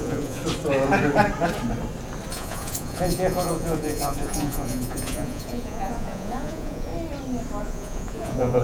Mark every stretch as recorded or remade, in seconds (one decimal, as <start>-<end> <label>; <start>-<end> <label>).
0.0-0.4 remade; 0.4-2.3 recorded; 2.3-6.9 remade; 6.9-7.6 recorded; 7.6-8.6 remade